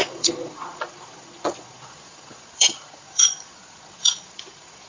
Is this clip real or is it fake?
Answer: fake